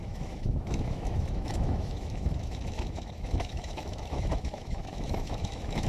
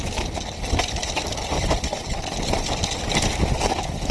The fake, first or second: first